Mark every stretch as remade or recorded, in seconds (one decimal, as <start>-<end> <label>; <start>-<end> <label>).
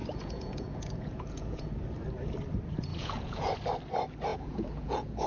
0.0-1.7 remade; 1.7-2.9 recorded; 2.9-3.5 remade; 3.5-4.3 recorded; 4.3-5.3 remade